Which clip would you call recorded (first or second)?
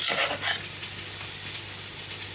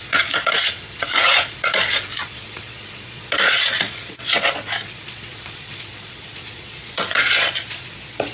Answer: first